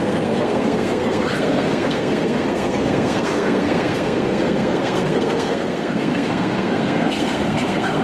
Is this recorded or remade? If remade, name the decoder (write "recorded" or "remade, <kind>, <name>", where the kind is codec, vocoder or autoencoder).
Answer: remade, codec, SNAC